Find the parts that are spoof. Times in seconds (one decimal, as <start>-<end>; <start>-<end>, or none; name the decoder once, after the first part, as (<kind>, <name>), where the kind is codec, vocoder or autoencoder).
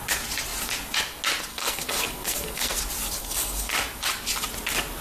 1.5-2.8 (codec, SNAC); 3.2-3.7